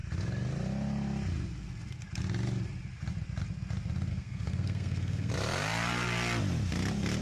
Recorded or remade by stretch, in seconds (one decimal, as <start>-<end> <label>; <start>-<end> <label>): 0.0-4.1 recorded; 4.1-5.3 remade; 5.3-7.2 recorded